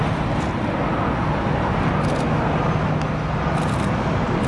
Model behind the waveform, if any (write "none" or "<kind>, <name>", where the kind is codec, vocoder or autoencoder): none